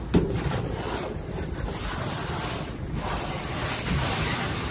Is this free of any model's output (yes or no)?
no